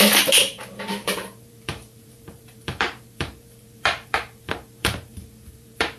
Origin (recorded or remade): remade